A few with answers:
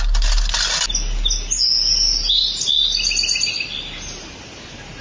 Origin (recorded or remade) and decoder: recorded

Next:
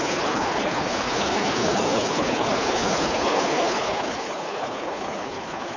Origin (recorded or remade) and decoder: remade, codec, HILCodec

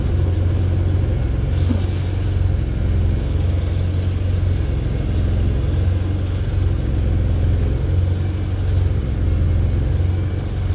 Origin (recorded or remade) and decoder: recorded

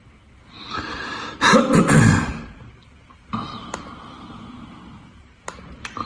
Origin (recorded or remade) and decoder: recorded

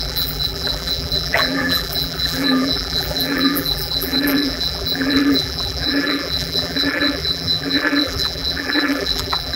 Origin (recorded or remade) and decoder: remade, vocoder, BigVGAN v2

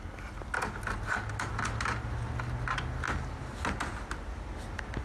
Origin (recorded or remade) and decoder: recorded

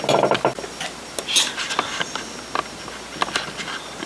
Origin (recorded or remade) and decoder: recorded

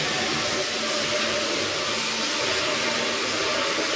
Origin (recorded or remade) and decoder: recorded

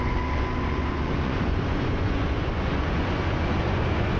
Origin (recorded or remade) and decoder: remade, vocoder, Vocos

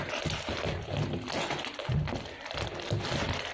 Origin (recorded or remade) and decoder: recorded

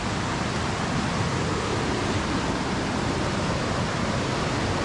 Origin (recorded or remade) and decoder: recorded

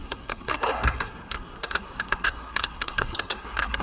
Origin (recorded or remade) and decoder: remade, codec, SNAC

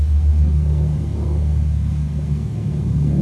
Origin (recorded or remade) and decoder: remade, codec, SNAC